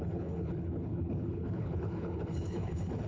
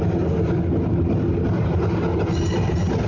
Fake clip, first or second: first